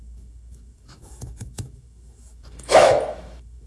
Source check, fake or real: fake